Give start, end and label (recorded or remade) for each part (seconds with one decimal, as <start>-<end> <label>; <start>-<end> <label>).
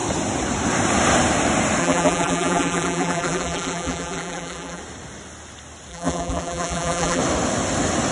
0.0-1.8 recorded; 1.8-4.8 remade; 4.8-5.9 recorded; 5.9-7.2 remade; 7.2-8.1 recorded